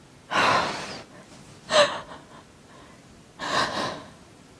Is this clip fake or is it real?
real